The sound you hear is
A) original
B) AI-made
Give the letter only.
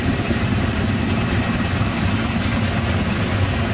A